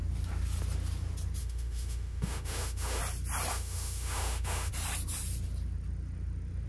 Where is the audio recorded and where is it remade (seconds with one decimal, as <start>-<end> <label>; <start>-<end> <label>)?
0.0-1.4 recorded; 1.4-3.0 remade; 3.0-3.5 recorded; 3.5-4.7 remade; 4.7-6.7 recorded